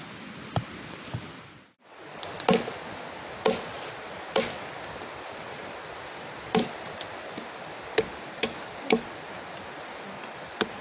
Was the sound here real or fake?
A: real